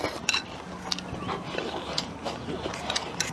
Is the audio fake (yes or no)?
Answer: no